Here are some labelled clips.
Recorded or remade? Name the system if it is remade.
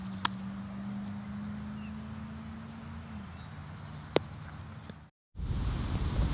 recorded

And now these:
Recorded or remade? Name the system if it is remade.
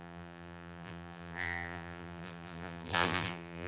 remade, vocoder, BigVGAN v2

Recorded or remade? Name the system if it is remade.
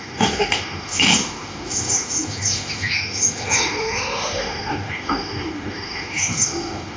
remade, autoencoder, DAC-VAE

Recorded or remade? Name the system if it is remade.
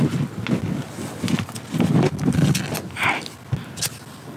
recorded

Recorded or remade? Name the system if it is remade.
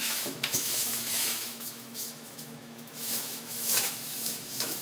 remade, autoencoder, DAC-VAE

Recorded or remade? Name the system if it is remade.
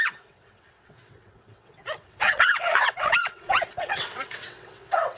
remade, vocoder, WaveNeXt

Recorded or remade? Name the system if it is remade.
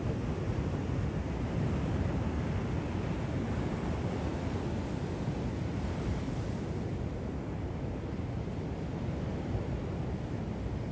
recorded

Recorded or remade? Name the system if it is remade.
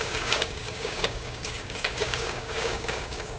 remade, codec, DAC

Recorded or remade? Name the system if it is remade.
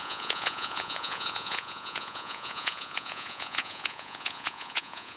remade, vocoder, Vocos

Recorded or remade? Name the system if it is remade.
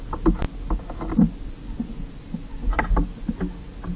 recorded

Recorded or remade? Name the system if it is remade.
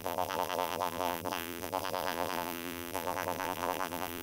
remade, vocoder, BigVGAN v2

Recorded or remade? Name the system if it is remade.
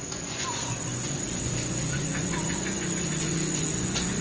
remade, vocoder, Vocos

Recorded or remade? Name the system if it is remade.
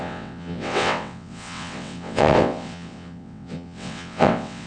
remade, vocoder, WaveNeXt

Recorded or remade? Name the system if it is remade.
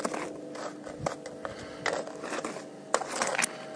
recorded